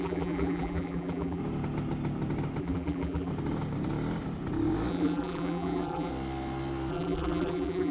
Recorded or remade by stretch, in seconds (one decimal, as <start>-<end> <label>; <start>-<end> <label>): 0.0-1.4 remade; 1.4-2.6 recorded; 2.6-3.3 remade; 3.3-4.9 recorded; 4.9-6.1 remade; 6.1-6.9 recorded; 6.9-7.9 remade